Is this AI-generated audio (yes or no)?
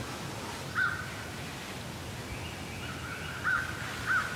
no